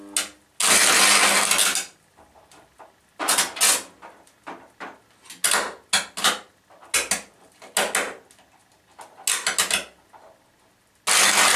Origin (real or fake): real